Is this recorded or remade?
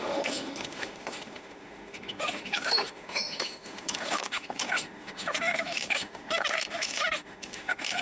remade